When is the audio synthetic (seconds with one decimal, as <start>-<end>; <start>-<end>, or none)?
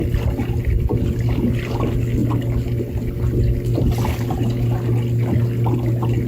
none